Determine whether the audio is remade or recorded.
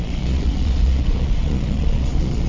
remade